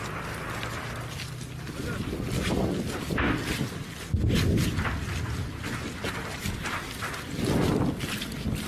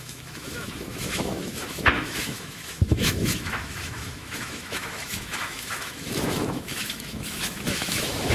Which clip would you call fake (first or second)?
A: second